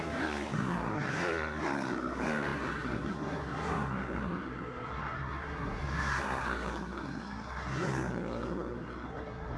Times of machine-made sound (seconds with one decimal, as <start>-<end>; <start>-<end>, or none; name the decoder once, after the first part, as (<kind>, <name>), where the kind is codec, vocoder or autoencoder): 0.0-9.6 (codec, SNAC)